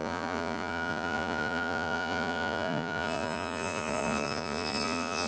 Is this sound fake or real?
fake